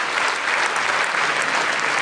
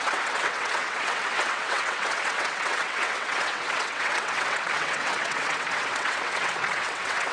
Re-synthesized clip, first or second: second